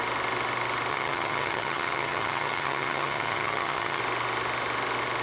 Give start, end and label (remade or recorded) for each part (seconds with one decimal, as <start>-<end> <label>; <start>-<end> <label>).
0.0-0.9 recorded; 0.9-4.0 remade; 4.0-5.2 recorded